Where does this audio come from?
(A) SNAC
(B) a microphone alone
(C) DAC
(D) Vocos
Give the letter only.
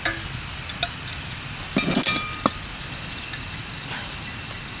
B